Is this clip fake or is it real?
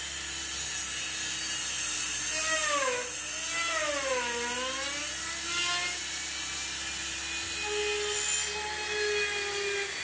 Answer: real